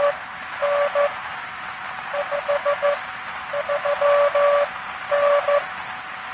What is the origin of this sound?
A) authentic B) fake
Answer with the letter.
A